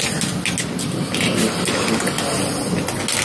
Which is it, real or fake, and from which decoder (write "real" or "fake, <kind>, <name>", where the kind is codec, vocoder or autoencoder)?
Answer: real